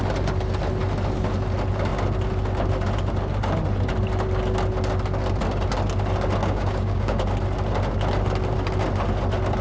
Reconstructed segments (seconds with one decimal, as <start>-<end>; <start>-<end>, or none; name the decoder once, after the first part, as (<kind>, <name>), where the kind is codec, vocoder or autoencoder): 6.4-7.2 (codec, DAC)

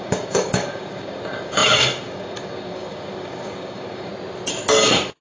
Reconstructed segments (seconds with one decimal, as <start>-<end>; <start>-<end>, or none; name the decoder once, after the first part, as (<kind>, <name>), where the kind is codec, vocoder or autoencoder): 0.0-4.1 (codec, DAC)

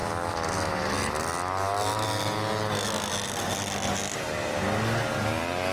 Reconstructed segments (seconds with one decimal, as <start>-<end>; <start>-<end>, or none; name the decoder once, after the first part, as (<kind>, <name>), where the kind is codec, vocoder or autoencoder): none

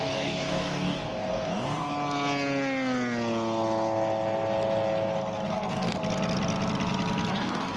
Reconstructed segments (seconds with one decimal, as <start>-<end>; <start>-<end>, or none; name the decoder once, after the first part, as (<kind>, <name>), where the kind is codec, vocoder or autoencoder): 0.0-1.9 (codec, DAC); 5.5-6.0; 7.3-7.8

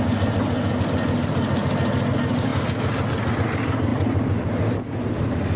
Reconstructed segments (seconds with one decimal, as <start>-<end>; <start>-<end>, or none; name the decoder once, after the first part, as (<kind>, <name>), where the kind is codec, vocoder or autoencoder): none

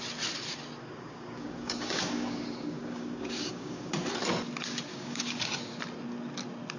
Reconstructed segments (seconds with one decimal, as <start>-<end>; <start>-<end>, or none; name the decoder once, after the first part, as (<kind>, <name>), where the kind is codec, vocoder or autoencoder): 0.8-3.9 (codec, DAC); 4.9-5.4

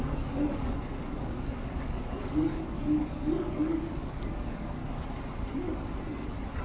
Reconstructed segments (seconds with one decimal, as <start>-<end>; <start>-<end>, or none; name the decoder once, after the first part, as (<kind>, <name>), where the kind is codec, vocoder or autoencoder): 0.0-4.8 (codec, DAC)

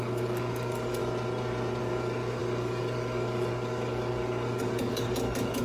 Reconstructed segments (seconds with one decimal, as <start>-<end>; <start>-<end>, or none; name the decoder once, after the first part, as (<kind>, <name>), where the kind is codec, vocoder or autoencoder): 0.0-1.0 (codec, DAC); 1.8-5.6